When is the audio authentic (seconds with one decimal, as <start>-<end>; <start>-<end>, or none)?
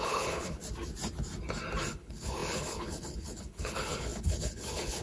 0.6-1.9